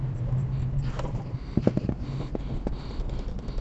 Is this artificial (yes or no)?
yes